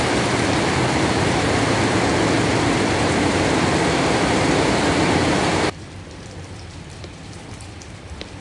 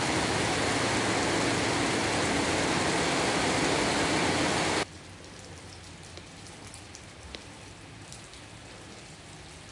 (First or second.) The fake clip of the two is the first